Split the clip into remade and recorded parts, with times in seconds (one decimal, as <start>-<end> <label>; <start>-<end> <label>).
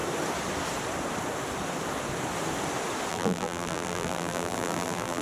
0.0-3.1 recorded; 3.1-5.2 remade